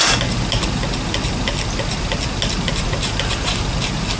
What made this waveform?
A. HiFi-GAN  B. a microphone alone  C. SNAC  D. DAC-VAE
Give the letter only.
B